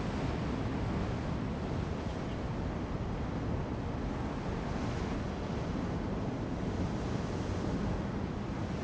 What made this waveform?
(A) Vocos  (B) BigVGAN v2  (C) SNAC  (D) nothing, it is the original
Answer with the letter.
D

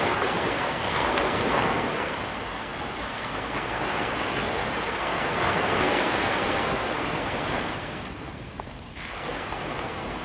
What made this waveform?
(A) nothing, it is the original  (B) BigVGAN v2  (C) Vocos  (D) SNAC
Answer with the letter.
D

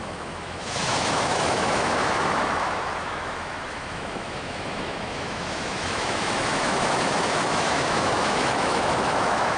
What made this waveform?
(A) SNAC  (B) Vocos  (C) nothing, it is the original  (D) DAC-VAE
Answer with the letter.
D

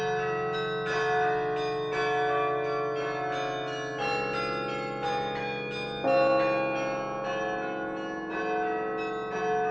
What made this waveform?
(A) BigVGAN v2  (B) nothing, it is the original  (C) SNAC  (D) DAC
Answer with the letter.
B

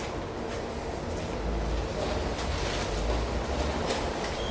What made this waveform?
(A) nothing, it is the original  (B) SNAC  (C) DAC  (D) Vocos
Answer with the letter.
A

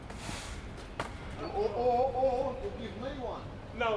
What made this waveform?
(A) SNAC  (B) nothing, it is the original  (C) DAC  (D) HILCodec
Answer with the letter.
B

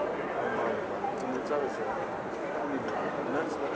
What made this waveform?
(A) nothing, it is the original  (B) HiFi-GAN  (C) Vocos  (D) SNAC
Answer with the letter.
A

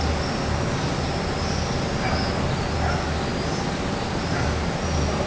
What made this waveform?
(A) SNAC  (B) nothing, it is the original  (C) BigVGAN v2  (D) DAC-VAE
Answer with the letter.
B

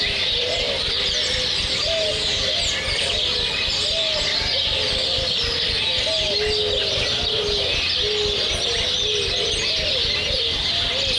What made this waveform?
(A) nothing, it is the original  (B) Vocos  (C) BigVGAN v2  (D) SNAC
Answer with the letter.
A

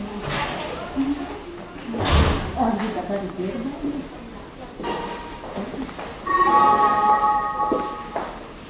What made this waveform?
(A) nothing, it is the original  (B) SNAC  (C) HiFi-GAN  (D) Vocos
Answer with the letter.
A